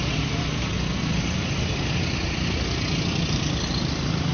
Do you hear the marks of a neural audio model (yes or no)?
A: no